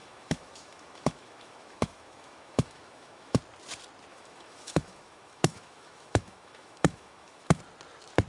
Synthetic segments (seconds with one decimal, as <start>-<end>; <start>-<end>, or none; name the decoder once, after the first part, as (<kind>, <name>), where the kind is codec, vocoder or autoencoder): 0.0-3.4 (autoencoder, DAC-VAE); 4.1-7.6